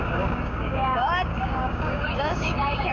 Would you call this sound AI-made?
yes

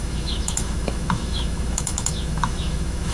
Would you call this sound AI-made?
yes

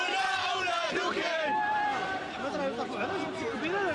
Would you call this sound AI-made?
no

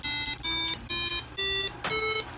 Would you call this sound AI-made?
no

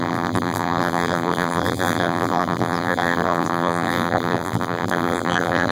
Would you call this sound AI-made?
yes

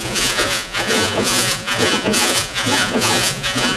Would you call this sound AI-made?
yes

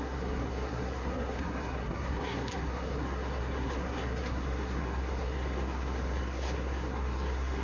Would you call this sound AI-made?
yes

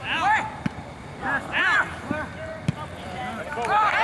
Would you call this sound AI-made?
yes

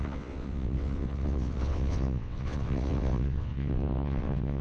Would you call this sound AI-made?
yes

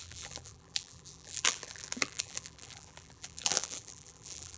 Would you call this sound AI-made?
yes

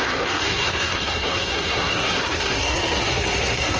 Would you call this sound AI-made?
yes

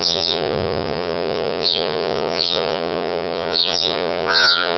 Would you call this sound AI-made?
yes